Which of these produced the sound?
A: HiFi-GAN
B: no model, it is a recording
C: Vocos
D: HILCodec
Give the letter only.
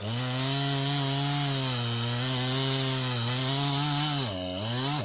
B